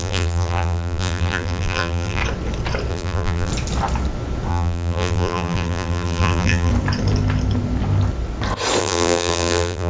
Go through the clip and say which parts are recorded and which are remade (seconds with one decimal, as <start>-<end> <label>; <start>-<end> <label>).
0.0-2.2 remade; 2.2-2.9 recorded; 2.9-3.5 remade; 3.5-4.5 recorded; 4.5-6.7 remade; 6.7-8.8 recorded; 8.8-9.9 remade